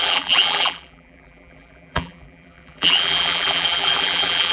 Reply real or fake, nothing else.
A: fake